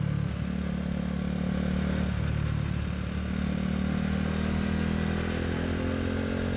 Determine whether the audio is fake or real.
real